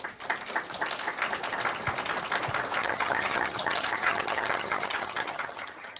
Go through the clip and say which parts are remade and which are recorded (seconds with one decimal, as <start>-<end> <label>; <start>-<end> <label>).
0.0-2.8 recorded; 2.8-6.0 remade